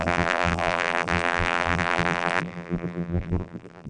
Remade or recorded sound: remade